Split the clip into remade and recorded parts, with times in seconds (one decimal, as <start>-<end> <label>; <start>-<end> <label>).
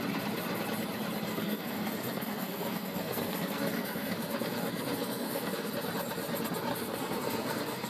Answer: 0.0-1.3 recorded; 1.3-5.7 remade; 5.7-6.7 recorded; 6.7-7.9 remade